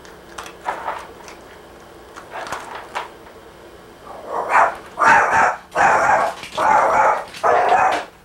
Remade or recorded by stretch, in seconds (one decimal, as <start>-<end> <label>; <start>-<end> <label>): 0.0-8.2 recorded